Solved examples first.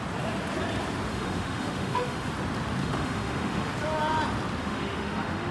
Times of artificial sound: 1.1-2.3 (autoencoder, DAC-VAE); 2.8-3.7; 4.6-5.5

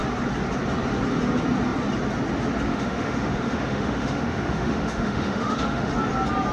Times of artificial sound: 2.7-5.9 (autoencoder, DAC-VAE)

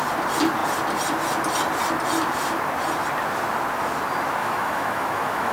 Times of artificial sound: 4.4-5.5 (autoencoder, DAC-VAE)

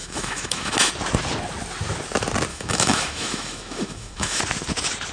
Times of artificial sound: 0.0-0.9 (autoencoder, DAC-VAE); 2.5-4.4

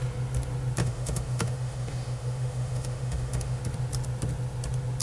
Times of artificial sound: 0.8-3.6 (autoencoder, DAC-VAE)

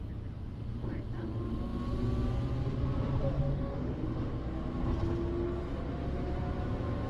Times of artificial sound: 3.5-4.3 (autoencoder, DAC-VAE)

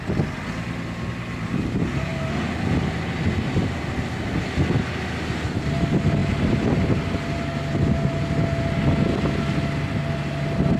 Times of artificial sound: none

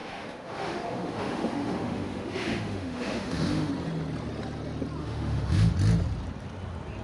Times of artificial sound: 0.0-3.7 (autoencoder, DAC-VAE); 5.0-5.7